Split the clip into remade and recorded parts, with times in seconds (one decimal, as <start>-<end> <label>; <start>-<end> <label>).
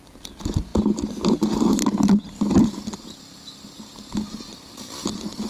0.0-0.7 remade; 0.7-1.9 recorded; 1.9-5.5 remade